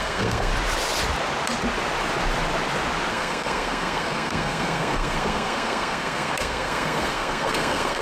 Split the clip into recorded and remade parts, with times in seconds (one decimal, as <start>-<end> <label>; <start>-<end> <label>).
0.0-0.5 remade; 0.5-3.1 recorded; 3.1-8.0 remade